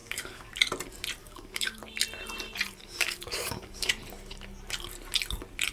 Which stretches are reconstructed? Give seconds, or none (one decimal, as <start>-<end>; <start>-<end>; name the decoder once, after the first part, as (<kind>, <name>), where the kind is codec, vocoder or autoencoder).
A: 0.0-0.5 (codec, DAC); 1.2-1.8; 2.8-3.9